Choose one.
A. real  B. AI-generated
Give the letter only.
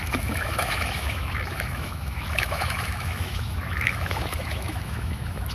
B